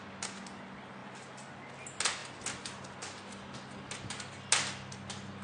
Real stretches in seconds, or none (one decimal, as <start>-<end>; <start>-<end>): 0.0-5.4